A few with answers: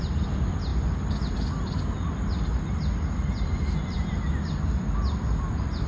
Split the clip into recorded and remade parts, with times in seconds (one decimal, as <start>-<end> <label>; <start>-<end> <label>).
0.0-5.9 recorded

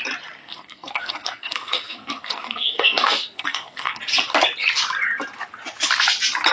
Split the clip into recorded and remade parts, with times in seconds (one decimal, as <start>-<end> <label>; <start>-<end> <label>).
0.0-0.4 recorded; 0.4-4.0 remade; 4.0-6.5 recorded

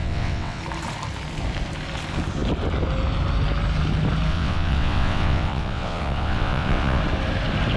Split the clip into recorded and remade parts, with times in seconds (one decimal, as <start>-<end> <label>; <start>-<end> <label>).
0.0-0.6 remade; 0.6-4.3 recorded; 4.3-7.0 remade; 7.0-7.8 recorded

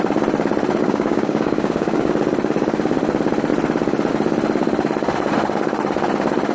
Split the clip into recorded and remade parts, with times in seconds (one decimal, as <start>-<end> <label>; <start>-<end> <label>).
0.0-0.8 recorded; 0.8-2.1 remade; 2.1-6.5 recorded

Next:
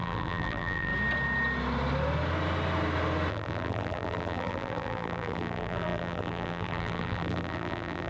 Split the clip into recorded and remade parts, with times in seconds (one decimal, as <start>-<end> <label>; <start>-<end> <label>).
0.0-0.9 remade; 0.9-3.3 recorded; 3.3-8.1 remade

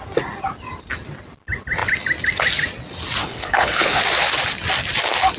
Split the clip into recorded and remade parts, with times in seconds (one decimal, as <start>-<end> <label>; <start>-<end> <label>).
0.0-3.2 recorded; 3.2-4.0 remade; 4.0-5.4 recorded

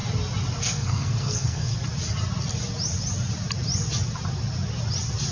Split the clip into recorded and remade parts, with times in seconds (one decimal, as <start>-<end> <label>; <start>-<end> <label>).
0.0-0.6 recorded; 0.6-1.7 remade; 1.7-5.3 recorded